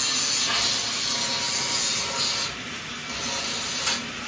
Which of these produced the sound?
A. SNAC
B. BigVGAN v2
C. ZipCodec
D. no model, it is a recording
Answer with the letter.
D